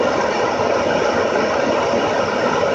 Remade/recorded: recorded